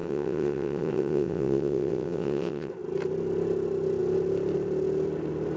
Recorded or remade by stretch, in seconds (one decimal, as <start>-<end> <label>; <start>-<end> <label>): 0.0-2.7 remade; 2.7-5.6 recorded